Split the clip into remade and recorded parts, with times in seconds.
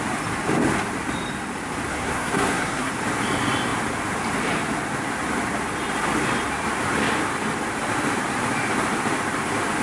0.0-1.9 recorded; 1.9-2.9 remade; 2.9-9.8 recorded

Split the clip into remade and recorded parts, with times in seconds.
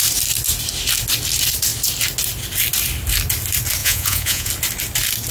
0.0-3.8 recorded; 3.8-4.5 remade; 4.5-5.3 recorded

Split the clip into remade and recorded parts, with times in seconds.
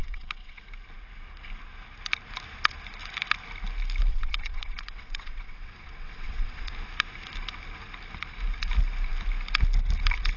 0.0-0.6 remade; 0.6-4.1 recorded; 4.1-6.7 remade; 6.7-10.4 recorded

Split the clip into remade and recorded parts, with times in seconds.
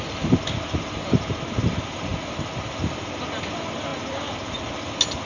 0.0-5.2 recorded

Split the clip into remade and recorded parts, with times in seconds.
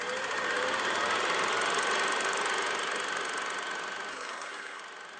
0.0-4.1 recorded; 4.1-4.8 remade; 4.8-5.2 recorded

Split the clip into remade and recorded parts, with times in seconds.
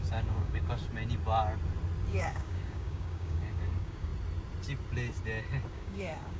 0.0-0.8 remade; 0.8-2.1 recorded; 2.1-4.1 remade; 4.1-5.7 recorded; 5.7-6.4 remade